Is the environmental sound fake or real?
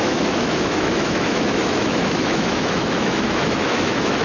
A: fake